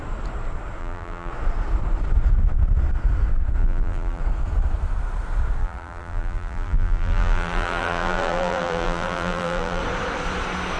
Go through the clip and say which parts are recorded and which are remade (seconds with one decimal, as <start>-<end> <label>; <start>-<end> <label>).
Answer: 0.0-0.8 recorded; 0.8-1.3 remade; 1.3-3.6 recorded; 3.6-4.2 remade; 4.2-5.6 recorded; 5.6-9.8 remade; 9.8-10.8 recorded